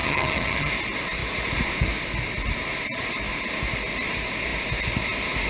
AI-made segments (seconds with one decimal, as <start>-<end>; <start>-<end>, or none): 0.0-0.7